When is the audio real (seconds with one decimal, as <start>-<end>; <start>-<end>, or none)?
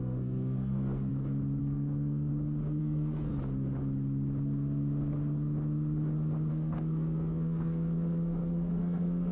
1.1-1.6; 2.3-2.8; 3.3-6.5